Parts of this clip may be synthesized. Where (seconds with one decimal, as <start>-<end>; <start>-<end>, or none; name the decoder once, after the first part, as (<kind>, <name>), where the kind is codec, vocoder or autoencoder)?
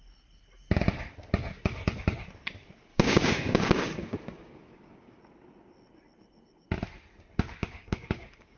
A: 2.9-5.2 (codec, DAC); 7.6-8.6